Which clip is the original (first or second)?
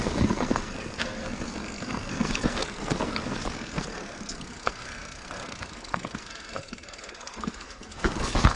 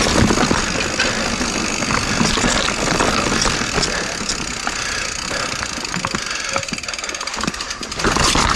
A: second